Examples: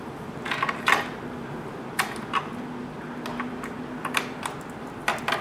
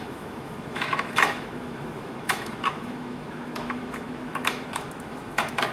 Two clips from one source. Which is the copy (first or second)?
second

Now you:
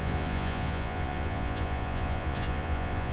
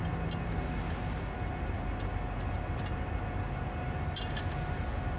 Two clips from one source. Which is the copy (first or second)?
first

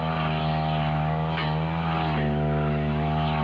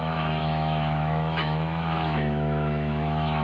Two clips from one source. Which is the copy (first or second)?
second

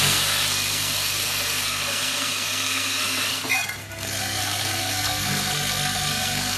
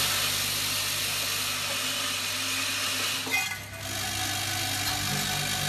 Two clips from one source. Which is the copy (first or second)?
first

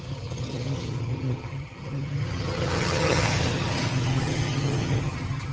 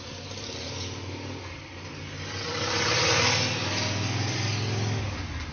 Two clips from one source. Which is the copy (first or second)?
first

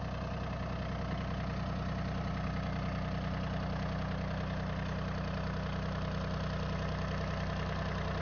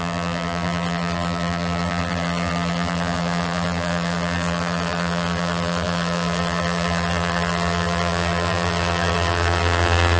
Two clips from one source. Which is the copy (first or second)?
second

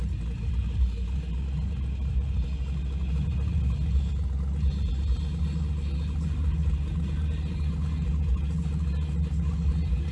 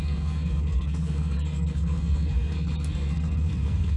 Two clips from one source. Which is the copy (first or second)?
second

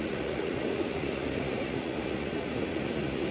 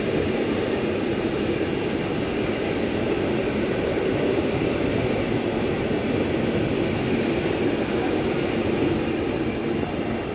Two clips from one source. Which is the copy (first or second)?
first